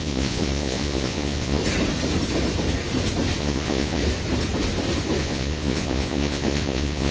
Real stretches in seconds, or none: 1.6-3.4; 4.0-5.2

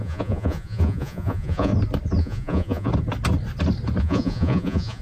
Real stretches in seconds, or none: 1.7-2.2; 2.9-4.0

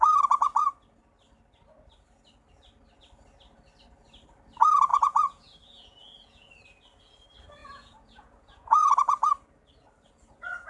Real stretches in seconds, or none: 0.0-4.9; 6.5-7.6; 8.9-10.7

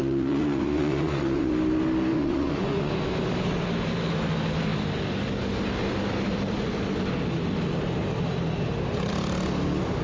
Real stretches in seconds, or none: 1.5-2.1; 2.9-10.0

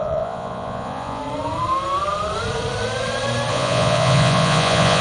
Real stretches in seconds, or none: 1.2-3.5

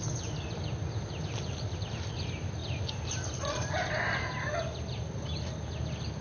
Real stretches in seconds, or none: 0.0-6.2